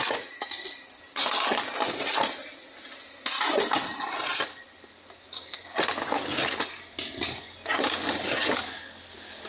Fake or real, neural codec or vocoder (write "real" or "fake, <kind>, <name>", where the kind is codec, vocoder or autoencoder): real